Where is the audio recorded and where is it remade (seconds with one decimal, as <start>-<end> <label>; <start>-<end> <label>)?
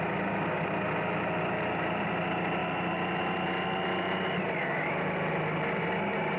0.0-6.4 recorded